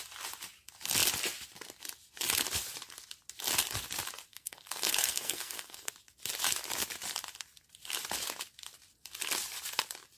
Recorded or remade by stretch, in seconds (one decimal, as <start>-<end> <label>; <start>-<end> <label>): 0.0-4.3 recorded; 4.3-5.9 remade; 5.9-10.2 recorded